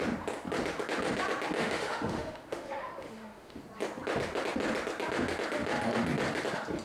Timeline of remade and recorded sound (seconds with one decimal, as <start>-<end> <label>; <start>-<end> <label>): 0.0-1.6 recorded; 1.6-3.6 remade; 3.6-6.8 recorded